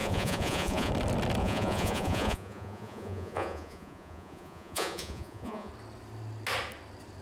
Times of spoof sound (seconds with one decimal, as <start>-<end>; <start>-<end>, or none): 0.0-0.9; 1.4-5.7